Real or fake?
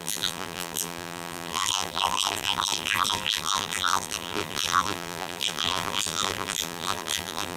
fake